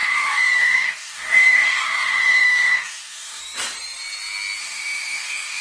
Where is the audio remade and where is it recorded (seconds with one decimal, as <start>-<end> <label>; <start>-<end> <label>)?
0.0-3.4 remade; 3.4-4.6 recorded; 4.6-5.6 remade